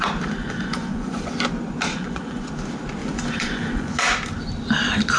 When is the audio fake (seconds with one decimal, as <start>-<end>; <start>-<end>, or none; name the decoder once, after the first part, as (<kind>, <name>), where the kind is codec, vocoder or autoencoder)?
0.4-1.3 (vocoder, Vocos); 1.9-2.5; 3.0-4.0